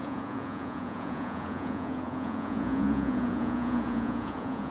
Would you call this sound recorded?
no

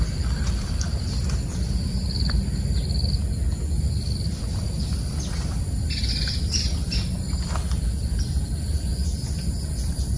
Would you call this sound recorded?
yes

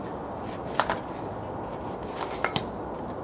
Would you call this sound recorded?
yes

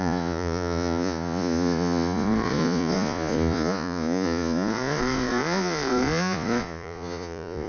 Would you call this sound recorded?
no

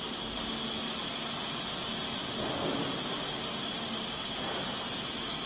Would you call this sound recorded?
yes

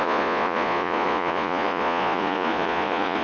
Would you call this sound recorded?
no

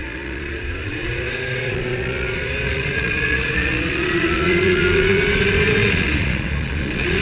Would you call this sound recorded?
no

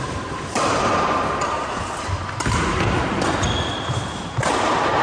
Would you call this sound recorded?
yes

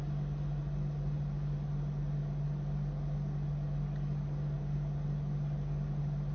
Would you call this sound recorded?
yes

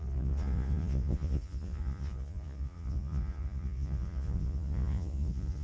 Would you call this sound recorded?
no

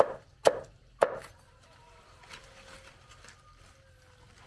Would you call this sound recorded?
yes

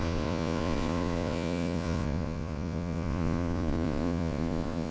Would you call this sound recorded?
no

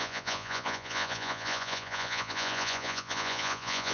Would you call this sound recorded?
no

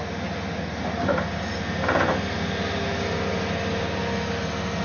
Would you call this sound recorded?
yes